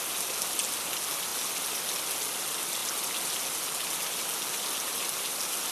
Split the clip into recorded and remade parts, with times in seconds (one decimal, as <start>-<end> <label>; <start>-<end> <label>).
0.0-5.7 recorded